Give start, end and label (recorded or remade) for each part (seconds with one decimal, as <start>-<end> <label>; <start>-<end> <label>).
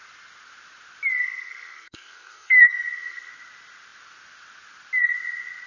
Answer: 0.0-1.2 recorded; 1.2-3.3 remade; 3.3-5.7 recorded